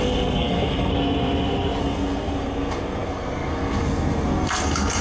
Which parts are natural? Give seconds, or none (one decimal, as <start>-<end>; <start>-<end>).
0.9-1.8